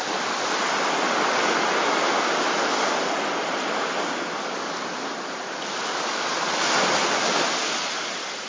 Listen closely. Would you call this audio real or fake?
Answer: real